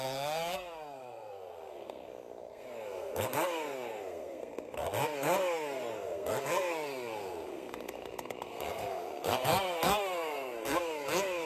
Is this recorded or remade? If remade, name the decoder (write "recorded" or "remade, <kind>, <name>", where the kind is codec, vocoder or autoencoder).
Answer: remade, codec, SNAC